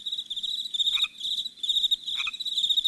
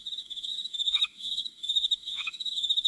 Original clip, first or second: first